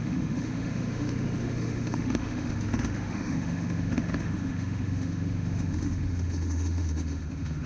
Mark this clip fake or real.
fake